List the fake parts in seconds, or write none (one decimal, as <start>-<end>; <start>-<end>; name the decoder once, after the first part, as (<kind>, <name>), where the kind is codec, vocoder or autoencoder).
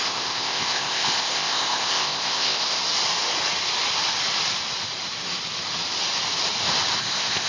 0.0-2.8 (codec, ZipCodec); 7.0-7.5